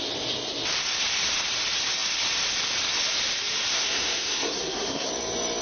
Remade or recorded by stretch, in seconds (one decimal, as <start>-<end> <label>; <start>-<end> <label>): 0.0-3.7 recorded; 3.7-5.1 remade; 5.1-5.6 recorded